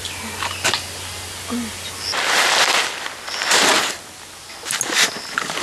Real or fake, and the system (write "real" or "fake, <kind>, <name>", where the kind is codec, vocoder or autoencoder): real